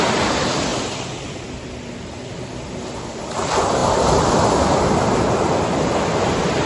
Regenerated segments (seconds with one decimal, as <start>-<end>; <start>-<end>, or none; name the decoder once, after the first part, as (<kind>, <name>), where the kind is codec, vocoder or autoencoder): none